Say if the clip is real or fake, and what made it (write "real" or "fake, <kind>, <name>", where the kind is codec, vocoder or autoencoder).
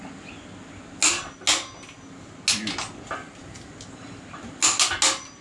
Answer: real